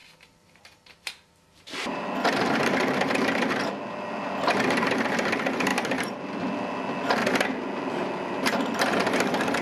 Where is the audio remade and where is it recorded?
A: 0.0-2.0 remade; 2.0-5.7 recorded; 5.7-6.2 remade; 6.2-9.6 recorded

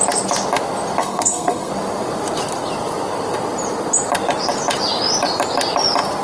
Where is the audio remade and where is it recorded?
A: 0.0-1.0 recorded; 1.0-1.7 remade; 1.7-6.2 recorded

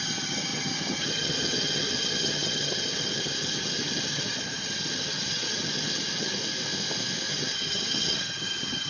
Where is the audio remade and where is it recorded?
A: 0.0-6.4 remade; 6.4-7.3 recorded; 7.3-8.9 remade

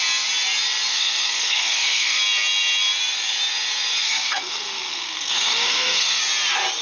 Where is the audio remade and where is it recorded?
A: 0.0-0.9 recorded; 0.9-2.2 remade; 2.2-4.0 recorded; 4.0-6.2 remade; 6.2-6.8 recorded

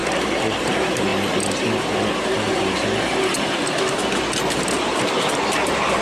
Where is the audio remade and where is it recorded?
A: 0.0-0.6 recorded; 0.6-1.1 remade; 1.1-4.7 recorded; 4.7-6.0 remade

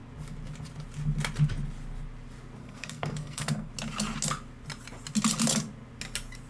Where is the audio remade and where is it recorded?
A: 0.0-2.6 recorded; 2.6-3.7 remade; 3.7-6.5 recorded